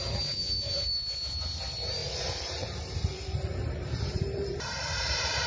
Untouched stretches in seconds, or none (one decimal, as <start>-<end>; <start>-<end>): 0.0-2.0